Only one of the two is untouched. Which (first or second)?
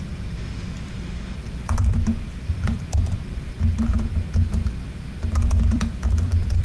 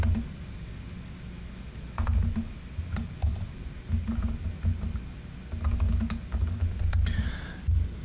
second